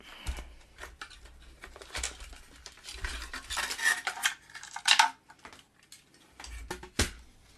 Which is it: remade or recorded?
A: recorded